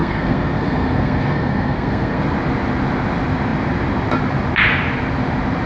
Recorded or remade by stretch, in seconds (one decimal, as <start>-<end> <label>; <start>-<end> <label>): 0.0-2.2 remade; 2.2-5.7 recorded

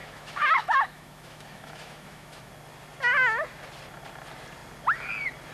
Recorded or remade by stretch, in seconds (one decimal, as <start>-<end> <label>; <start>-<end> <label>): 0.0-2.5 remade; 2.5-5.5 recorded

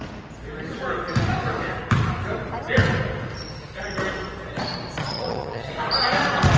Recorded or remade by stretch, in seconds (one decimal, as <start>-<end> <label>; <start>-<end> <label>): 0.0-5.0 recorded; 5.0-5.7 remade; 5.7-6.6 recorded

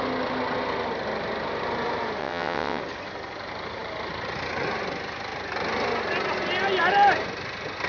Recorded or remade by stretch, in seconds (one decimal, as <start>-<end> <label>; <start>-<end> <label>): 0.0-2.2 recorded; 2.2-2.8 remade; 2.8-7.9 recorded

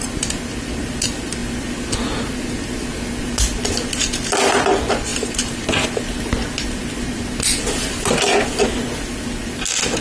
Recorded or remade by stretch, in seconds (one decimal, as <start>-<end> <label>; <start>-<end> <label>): 0.0-10.0 recorded

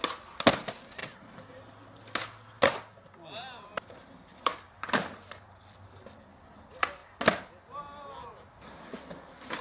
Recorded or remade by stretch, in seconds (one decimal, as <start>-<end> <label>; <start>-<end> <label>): 0.0-9.6 recorded